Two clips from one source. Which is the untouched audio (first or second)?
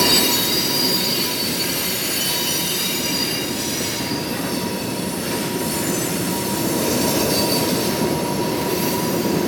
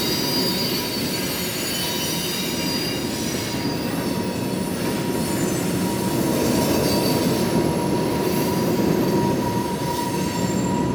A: second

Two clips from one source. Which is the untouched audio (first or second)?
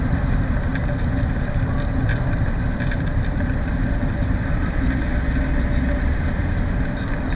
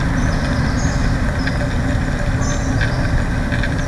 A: second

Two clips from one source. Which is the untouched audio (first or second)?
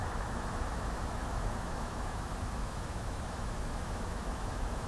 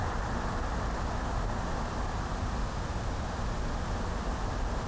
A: second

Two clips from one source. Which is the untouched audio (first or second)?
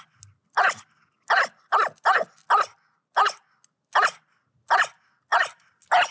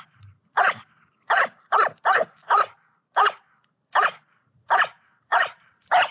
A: first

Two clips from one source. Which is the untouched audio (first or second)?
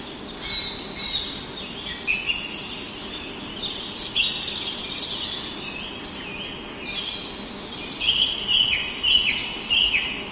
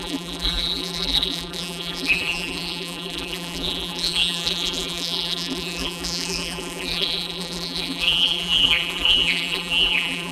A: first